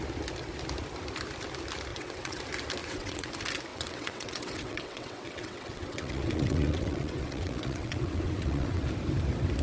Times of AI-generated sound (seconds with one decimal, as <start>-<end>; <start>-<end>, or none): 1.9-2.4; 2.8-3.3; 3.7-8.9